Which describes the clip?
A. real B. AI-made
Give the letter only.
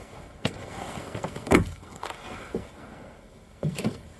B